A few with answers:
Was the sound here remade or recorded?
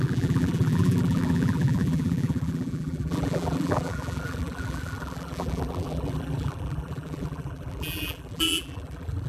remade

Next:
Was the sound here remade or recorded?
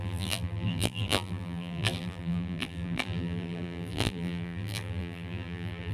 remade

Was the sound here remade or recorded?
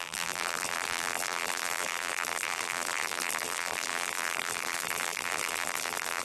remade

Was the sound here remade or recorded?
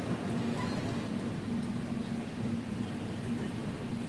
recorded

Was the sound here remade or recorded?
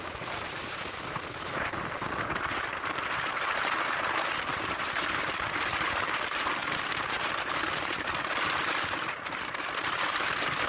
remade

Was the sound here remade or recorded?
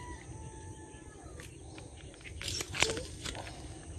recorded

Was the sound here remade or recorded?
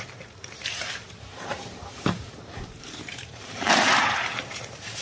remade